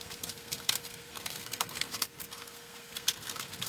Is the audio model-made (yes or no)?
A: yes